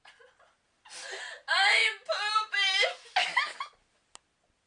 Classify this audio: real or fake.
real